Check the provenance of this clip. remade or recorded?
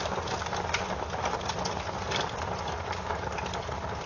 remade